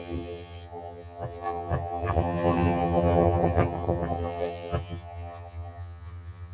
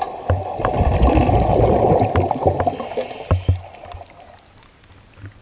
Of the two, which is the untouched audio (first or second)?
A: second